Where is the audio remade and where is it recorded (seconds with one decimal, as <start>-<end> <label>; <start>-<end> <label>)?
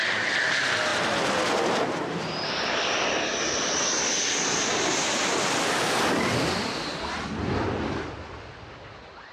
0.0-9.3 recorded